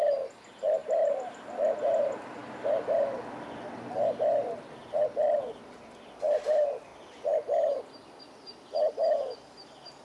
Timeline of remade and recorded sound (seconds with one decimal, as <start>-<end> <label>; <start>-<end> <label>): 0.0-0.8 recorded; 0.8-1.5 remade; 1.5-10.0 recorded